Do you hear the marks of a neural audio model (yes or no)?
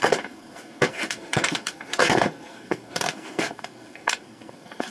yes